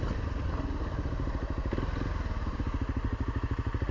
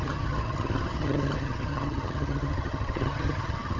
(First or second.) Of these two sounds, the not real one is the second